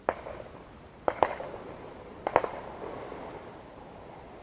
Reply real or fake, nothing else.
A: real